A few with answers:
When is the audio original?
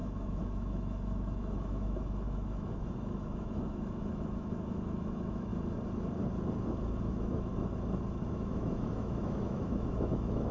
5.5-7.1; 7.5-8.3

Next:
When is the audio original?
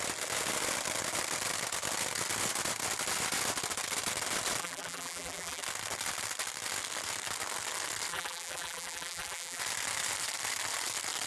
0.0-4.6; 5.6-8.1; 9.6-11.3